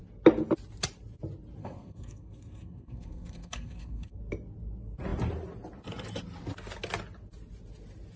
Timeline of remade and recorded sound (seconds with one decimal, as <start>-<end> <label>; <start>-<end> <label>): 0.0-1.6 recorded; 1.6-4.2 remade; 4.2-8.2 recorded